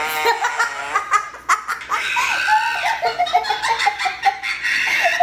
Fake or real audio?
real